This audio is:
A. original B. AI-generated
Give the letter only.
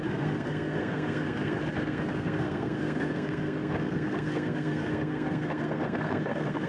B